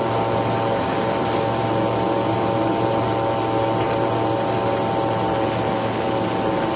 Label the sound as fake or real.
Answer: real